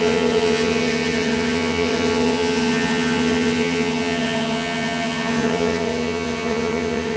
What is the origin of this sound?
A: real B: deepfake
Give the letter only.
B